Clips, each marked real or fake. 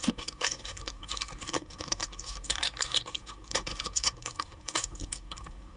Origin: fake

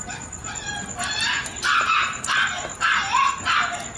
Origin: real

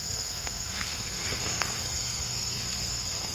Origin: fake